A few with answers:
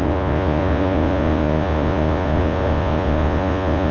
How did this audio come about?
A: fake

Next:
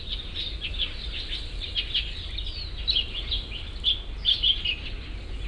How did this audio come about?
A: real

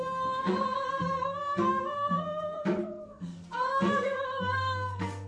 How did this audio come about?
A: fake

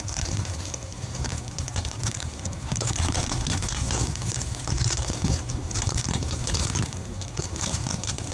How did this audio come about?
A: fake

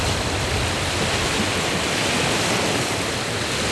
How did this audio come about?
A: real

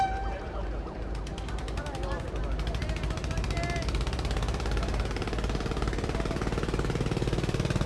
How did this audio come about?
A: real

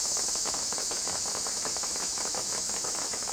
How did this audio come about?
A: fake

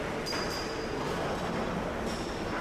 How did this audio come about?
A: real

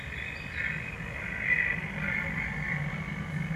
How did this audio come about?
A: real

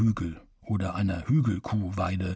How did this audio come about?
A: real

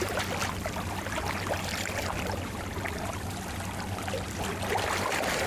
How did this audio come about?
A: real